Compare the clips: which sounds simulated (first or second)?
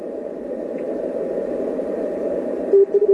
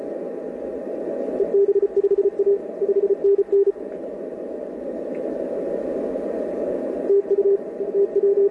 first